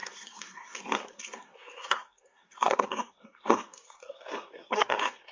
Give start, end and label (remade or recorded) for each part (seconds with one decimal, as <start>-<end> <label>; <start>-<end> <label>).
0.0-5.3 remade